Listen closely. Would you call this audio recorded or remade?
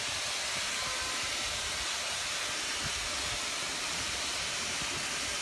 recorded